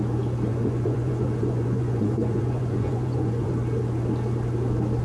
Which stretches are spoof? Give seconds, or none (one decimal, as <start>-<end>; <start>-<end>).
0.5-3.5